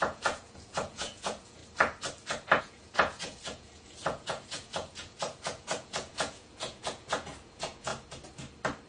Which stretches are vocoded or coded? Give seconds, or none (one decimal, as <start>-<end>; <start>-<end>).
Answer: 0.0-1.6; 2.6-7.9